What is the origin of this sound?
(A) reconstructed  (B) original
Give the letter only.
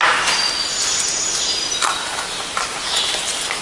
B